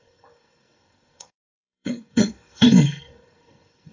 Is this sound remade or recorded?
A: remade